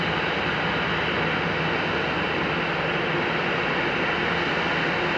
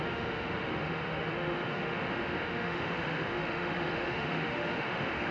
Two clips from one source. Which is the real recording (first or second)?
first